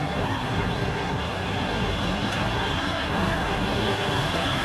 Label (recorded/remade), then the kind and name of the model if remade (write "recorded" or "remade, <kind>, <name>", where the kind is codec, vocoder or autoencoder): remade, codec, SNAC